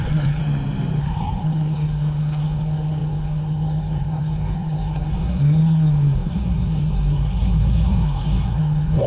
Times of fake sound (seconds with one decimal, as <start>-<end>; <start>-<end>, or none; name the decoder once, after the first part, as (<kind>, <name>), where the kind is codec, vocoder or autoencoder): 0.0-0.4 (codec, SNAC); 1.0-9.1